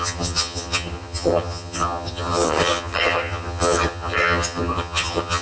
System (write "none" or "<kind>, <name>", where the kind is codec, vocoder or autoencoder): vocoder, HiFi-GAN